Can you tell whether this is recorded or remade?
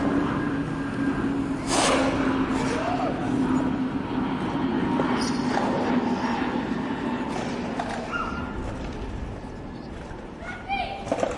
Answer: recorded